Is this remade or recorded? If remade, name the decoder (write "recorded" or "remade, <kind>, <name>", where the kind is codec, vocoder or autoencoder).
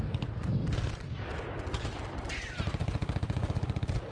recorded